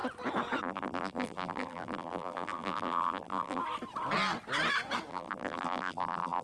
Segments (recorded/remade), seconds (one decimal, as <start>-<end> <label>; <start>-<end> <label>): 0.0-0.6 recorded; 0.6-3.6 remade; 3.6-5.1 recorded; 5.1-6.4 remade